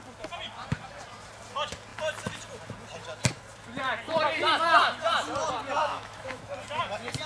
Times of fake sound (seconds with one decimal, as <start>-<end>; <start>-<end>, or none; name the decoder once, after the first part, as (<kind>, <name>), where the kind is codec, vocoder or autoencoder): 5.8-6.4 (autoencoder, DAC-VAE)